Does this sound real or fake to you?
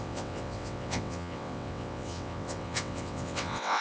fake